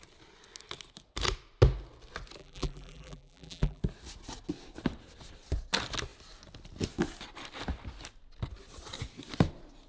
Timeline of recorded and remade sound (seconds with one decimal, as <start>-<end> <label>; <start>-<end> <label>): 0.0-2.4 recorded; 2.4-3.8 remade; 3.8-9.9 recorded